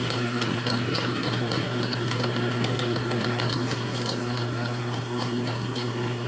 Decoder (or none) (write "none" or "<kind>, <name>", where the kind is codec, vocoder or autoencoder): codec, SNAC